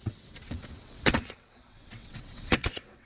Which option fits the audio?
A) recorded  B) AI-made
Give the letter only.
B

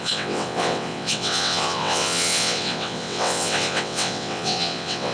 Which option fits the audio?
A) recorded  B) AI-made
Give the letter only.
B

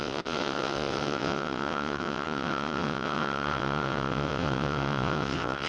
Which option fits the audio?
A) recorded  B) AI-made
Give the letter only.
B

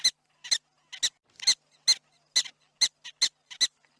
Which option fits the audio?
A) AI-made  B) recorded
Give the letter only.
B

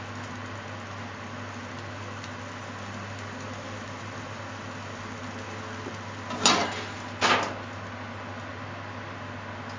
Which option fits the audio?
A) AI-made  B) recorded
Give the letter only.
B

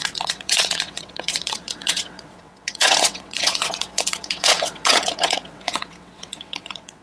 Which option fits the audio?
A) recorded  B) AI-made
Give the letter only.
B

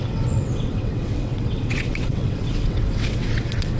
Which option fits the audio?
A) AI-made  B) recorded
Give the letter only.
A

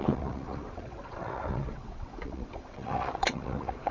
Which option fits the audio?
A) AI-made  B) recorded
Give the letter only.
A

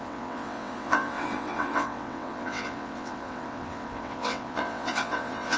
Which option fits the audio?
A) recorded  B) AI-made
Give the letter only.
B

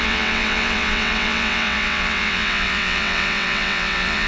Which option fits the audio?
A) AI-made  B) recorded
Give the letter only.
A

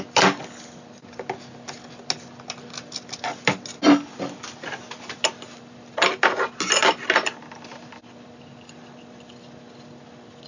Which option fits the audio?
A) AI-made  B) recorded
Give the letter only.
B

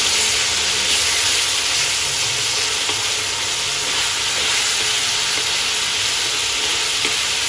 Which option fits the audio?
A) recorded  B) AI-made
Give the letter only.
A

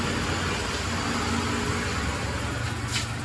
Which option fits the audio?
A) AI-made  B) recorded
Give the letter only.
B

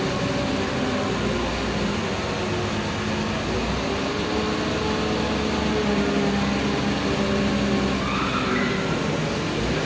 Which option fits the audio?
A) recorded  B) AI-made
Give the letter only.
A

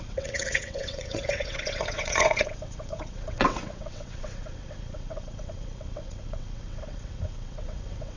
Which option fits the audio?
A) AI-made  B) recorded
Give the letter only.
A